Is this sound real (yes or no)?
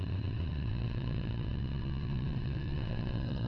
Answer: no